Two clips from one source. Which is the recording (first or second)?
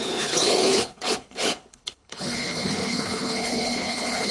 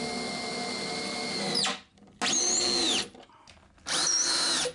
second